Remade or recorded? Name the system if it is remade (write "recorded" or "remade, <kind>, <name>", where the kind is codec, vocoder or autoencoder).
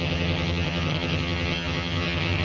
remade, vocoder, HiFi-GAN